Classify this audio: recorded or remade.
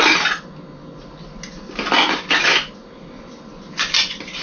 recorded